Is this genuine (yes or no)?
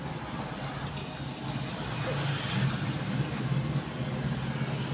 yes